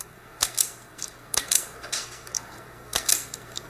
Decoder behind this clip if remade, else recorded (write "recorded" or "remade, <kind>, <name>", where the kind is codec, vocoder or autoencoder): remade, codec, SNAC